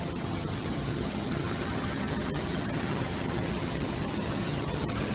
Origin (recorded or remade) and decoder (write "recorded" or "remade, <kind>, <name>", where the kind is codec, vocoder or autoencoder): remade, vocoder, HiFi-GAN